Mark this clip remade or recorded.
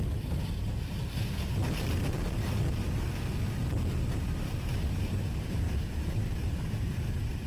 remade